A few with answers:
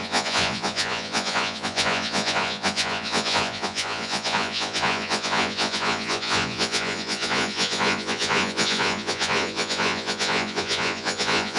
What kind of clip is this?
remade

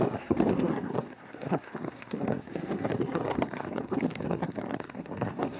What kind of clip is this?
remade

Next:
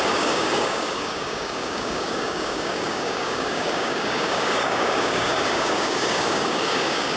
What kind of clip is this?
remade